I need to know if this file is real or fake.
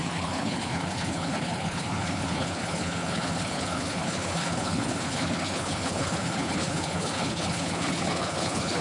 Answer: fake